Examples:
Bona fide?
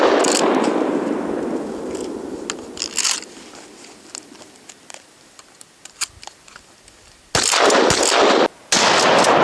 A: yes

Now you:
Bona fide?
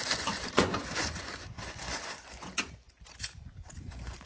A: no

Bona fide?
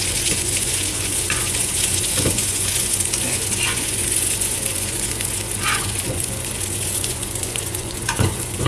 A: no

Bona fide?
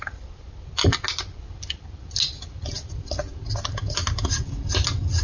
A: yes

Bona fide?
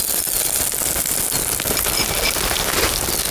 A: yes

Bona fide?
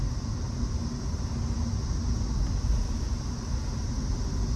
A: yes